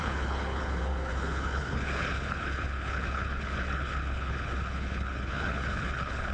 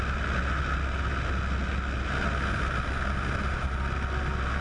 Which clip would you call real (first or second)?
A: second